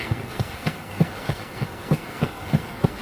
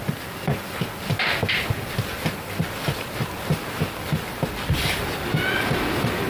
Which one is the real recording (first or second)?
second